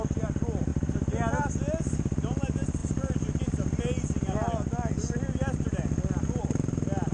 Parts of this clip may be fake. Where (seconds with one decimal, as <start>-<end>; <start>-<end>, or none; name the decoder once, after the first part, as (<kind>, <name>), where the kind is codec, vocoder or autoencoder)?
none